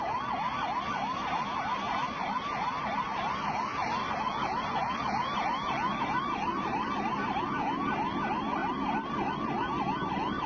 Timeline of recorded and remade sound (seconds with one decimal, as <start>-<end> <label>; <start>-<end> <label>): 0.0-6.5 recorded; 6.5-7.4 remade; 7.4-8.6 recorded; 8.6-9.3 remade; 9.3-10.5 recorded